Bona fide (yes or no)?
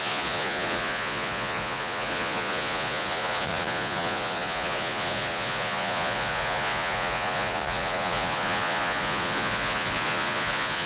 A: no